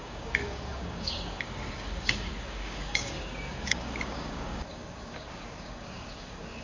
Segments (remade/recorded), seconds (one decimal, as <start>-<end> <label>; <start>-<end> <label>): 0.0-6.6 remade